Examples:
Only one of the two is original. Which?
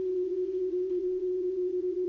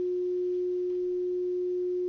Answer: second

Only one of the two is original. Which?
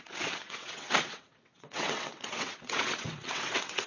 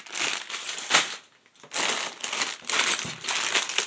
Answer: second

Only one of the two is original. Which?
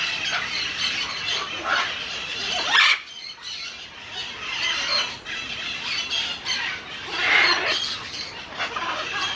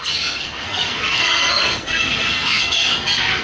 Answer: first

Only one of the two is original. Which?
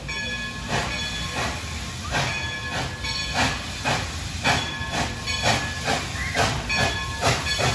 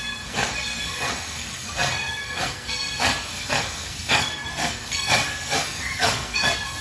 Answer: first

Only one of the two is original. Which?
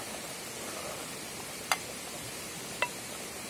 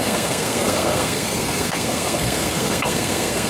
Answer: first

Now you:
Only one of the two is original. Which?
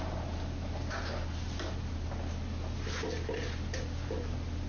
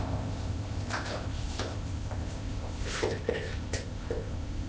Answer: first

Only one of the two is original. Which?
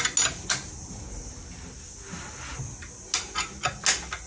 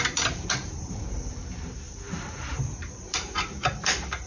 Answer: first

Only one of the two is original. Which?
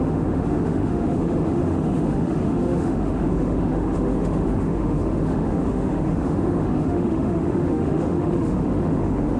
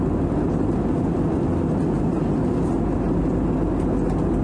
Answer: second